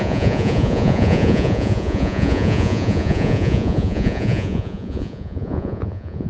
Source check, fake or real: fake